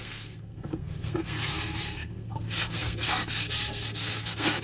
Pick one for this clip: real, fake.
fake